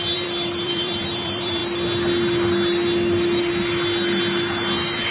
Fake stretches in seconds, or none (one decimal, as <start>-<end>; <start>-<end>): 0.0-1.6